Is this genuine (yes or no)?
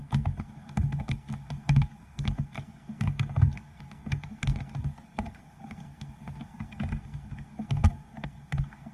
no